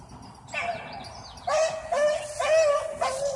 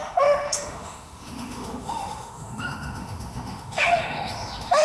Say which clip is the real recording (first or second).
first